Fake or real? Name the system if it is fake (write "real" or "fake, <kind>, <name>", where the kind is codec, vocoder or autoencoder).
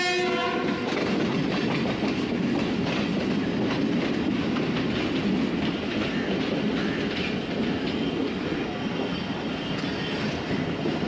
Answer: real